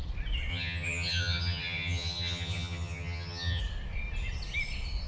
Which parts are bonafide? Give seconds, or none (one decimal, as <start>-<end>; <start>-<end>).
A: 0.0-0.5; 3.6-5.1